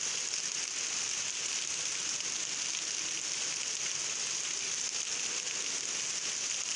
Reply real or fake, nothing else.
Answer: real